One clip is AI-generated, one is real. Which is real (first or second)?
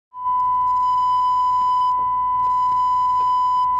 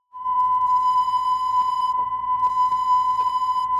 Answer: first